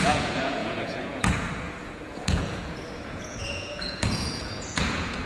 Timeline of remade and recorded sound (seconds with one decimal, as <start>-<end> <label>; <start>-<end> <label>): 0.0-5.3 remade